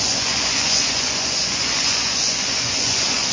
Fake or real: fake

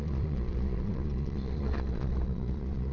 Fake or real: fake